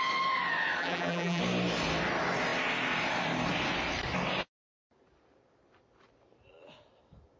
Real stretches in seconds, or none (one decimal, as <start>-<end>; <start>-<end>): 0.0-0.8; 1.4-7.4